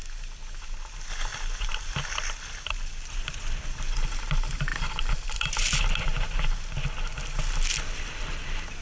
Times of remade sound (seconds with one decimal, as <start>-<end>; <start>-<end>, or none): 4.7-5.5